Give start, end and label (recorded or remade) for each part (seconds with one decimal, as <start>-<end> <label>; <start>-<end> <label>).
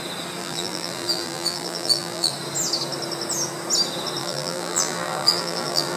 0.0-0.4 recorded; 0.4-2.3 remade; 2.3-4.2 recorded; 4.2-6.0 remade